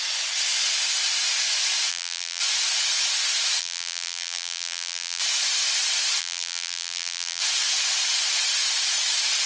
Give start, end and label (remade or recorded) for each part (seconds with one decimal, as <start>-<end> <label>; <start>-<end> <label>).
0.0-1.9 recorded; 1.9-2.4 remade; 2.4-3.6 recorded; 3.6-5.2 remade; 5.2-6.2 recorded; 6.2-7.4 remade; 7.4-9.5 recorded